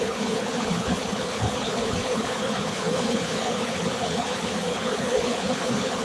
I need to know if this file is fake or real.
fake